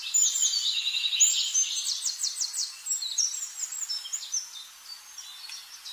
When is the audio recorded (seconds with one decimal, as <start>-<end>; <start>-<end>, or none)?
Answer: 0.0-2.6; 3.6-5.9